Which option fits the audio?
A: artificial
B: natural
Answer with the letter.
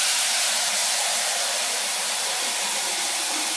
A